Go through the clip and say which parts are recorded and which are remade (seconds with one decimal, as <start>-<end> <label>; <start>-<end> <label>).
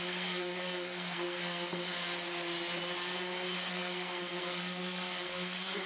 0.0-2.0 remade; 2.0-3.7 recorded; 3.7-5.9 remade